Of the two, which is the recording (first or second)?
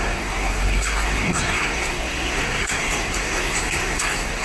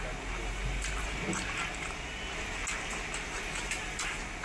second